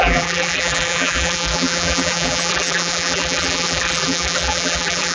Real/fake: fake